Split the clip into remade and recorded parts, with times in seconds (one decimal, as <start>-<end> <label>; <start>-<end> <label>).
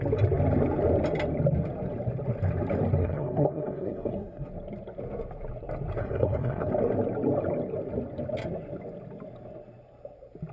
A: 0.0-3.0 recorded; 3.0-4.5 remade; 4.5-6.0 recorded; 6.0-6.7 remade; 6.7-10.5 recorded